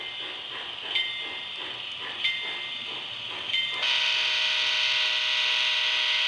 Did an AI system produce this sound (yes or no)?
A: no